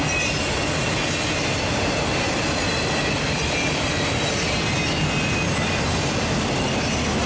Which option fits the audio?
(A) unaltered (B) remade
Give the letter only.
A